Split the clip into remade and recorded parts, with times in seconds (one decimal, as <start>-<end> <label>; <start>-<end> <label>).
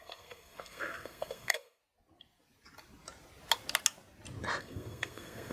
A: 0.0-1.8 remade; 1.8-4.6 recorded; 4.6-5.5 remade